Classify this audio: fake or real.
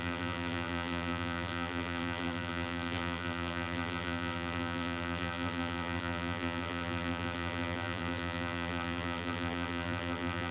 fake